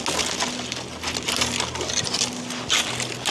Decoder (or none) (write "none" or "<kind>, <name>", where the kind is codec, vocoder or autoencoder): none